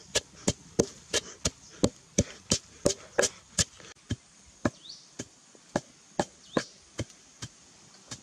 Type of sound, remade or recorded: recorded